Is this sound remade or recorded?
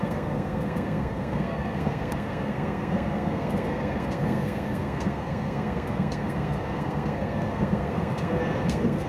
remade